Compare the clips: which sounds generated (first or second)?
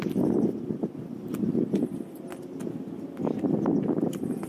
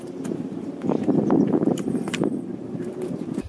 second